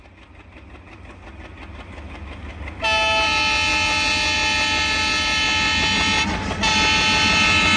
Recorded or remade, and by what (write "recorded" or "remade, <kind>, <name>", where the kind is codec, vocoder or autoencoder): recorded